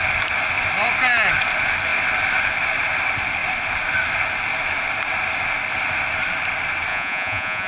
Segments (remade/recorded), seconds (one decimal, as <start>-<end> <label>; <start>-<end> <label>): 0.0-6.9 recorded; 6.9-7.7 remade

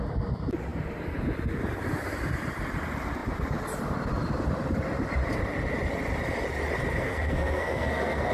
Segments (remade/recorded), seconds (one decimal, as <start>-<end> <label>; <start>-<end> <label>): 0.0-7.0 recorded; 7.0-8.3 remade

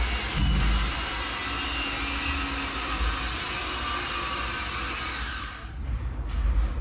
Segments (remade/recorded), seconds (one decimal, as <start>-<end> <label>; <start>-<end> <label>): 0.0-6.8 recorded

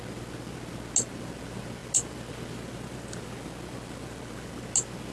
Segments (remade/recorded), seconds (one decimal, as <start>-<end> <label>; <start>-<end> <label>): 0.0-5.1 recorded

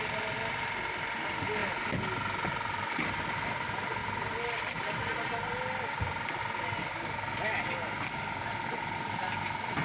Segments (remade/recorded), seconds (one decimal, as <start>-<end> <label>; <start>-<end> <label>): 0.0-9.8 recorded